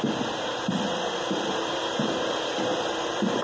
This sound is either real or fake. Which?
real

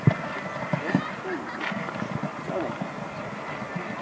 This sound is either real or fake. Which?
real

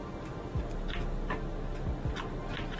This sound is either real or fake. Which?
real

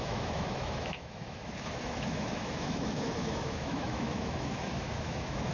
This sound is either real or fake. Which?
fake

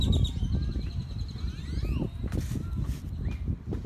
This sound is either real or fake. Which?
real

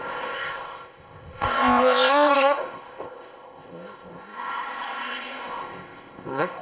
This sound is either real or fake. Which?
fake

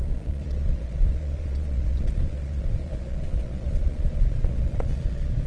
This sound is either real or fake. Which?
fake